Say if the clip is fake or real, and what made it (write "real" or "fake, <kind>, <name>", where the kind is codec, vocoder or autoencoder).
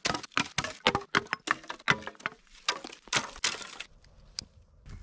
real